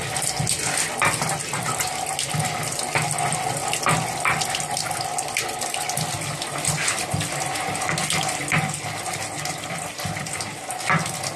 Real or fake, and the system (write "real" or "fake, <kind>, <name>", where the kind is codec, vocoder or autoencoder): real